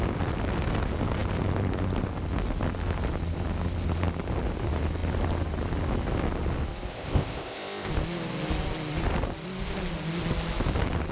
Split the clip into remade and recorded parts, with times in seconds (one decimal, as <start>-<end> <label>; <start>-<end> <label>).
0.0-6.9 recorded; 6.9-7.9 remade; 7.9-11.1 recorded